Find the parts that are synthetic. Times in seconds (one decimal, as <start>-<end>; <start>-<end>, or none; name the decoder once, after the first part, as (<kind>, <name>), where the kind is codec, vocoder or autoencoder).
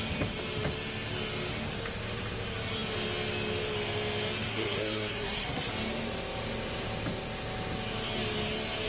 4.5-5.7 (codec, SNAC)